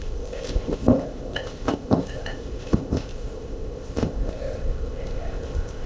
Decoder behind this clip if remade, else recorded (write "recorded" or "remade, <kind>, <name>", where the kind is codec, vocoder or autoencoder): remade, codec, ZipCodec